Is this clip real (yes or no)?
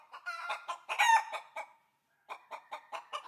no